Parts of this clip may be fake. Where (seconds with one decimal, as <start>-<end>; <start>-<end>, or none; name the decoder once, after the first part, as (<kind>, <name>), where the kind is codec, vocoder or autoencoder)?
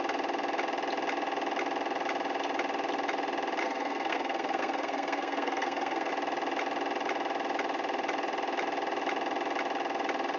3.6-6.1 (codec, SNAC)